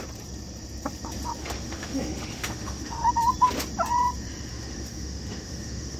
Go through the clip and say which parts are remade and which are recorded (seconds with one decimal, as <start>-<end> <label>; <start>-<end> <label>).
0.0-1.4 recorded; 1.4-3.1 remade; 3.1-4.5 recorded; 4.5-6.0 remade